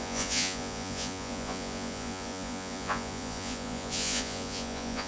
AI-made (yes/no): yes